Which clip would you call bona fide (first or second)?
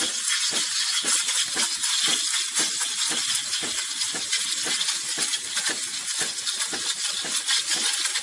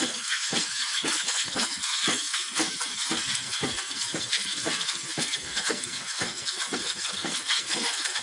first